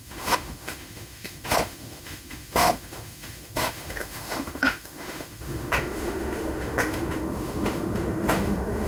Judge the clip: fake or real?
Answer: fake